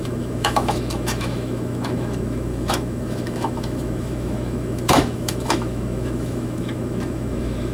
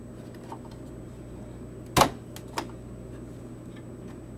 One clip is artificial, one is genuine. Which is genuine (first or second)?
second